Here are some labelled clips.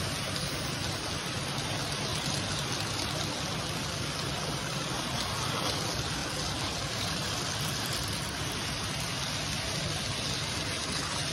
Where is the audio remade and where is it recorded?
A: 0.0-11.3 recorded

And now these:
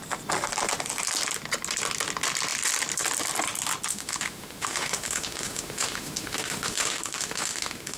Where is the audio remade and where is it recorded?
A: 0.0-3.9 recorded; 3.9-8.0 remade

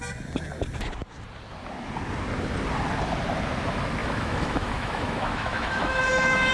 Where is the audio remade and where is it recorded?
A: 0.0-4.0 recorded; 4.0-6.5 remade

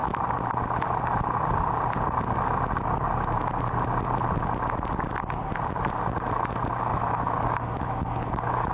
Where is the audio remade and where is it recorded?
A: 0.0-6.9 recorded; 6.9-8.7 remade

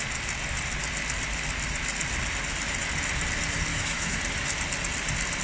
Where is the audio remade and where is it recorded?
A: 0.0-3.7 recorded; 3.7-4.2 remade; 4.2-5.4 recorded